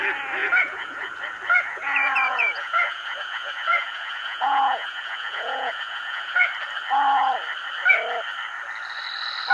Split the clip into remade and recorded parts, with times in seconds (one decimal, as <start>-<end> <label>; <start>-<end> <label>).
0.0-0.4 recorded; 0.4-1.0 remade; 1.0-1.7 recorded; 1.7-6.5 remade; 6.5-9.5 recorded